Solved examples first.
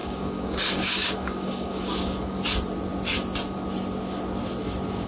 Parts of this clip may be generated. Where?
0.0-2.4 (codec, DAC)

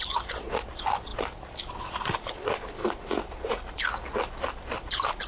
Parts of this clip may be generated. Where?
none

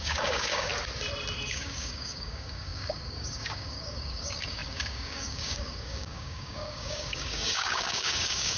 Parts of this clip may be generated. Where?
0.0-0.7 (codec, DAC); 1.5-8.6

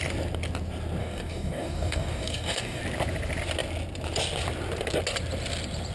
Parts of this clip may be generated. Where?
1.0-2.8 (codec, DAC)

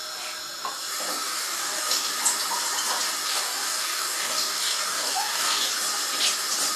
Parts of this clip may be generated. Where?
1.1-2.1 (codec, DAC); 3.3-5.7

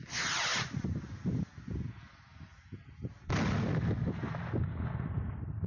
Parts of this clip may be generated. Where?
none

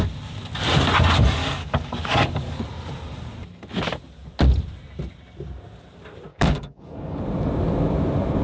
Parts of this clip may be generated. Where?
1.4-2.6 (codec, DAC); 6.3-7.2

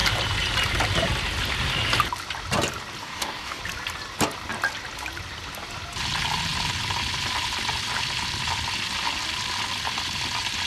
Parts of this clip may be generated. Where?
3.0-3.6 (codec, DAC)